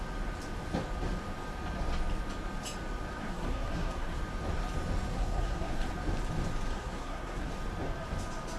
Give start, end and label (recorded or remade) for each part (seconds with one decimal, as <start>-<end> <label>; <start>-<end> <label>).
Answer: 0.0-3.1 recorded; 3.1-4.2 remade; 4.2-5.1 recorded; 5.1-5.9 remade; 5.9-6.7 recorded; 6.7-7.5 remade; 7.5-8.6 recorded